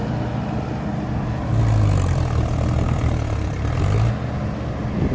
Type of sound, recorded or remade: recorded